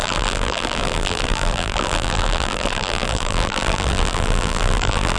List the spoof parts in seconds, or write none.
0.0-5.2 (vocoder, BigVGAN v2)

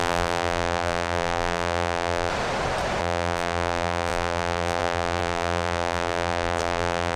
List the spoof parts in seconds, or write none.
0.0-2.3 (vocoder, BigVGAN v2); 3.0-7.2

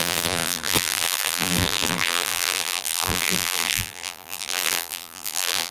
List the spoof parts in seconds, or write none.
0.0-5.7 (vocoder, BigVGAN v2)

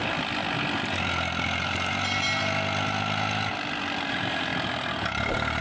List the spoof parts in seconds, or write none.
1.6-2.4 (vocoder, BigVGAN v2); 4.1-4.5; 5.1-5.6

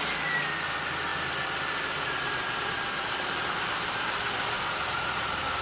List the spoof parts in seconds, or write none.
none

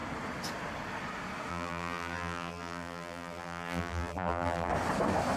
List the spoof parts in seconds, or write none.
1.5-4.7 (vocoder, BigVGAN v2)

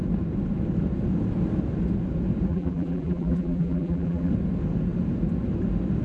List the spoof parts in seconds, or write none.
2.5-4.3 (vocoder, BigVGAN v2)